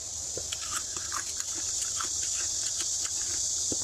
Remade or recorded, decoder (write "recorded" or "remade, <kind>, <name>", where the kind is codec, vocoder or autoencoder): remade, vocoder, BigVGAN v2